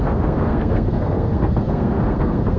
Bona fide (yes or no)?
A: no